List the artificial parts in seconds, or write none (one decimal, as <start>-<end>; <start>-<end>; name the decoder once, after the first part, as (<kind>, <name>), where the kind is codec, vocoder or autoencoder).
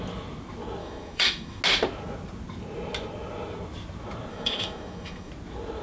0.8-1.6 (autoencoder, DAC-VAE); 4.3-5.3